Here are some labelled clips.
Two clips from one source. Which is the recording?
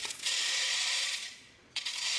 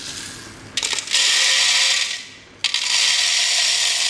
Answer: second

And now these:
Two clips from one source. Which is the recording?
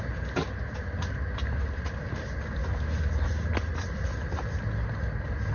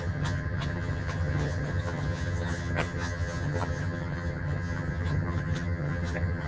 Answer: first